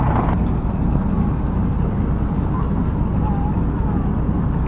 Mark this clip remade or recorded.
recorded